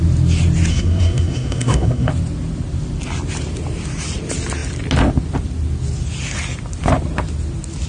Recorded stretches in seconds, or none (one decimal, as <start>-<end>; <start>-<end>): 0.0-0.7; 2.1-7.9